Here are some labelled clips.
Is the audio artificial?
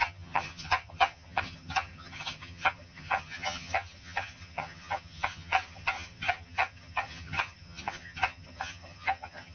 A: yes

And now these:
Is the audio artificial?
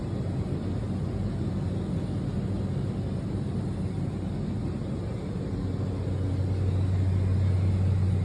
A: no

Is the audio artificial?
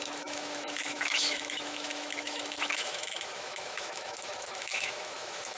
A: yes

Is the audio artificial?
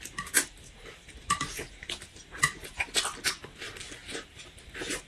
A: no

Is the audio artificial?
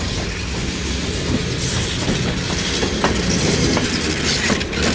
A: no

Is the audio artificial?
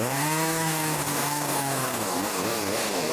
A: yes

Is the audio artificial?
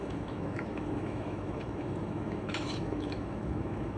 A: yes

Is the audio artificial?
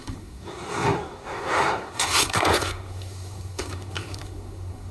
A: yes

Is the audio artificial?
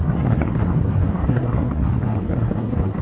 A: yes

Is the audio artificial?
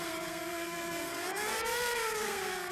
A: yes